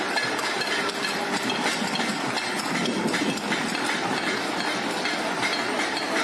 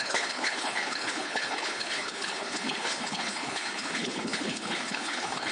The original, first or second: first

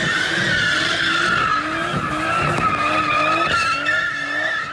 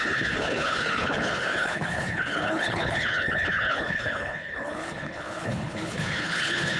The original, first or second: first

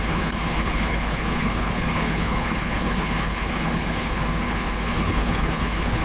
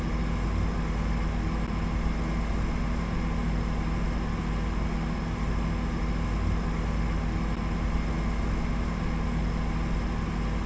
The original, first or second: second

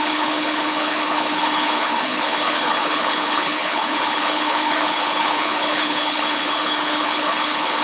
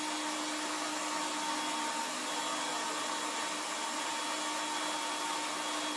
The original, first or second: second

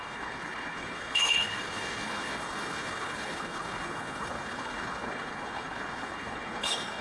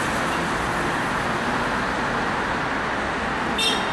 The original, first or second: second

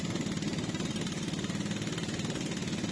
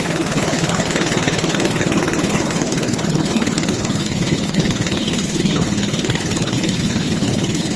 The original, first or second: first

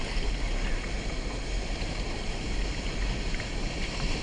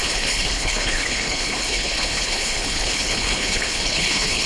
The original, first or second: first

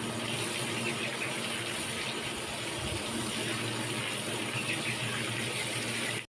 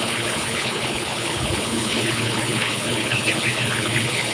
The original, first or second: first